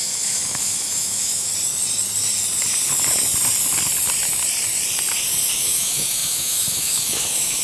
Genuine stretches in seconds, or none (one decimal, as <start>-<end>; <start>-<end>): 1.5-5.6